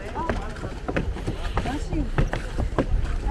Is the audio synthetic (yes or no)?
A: no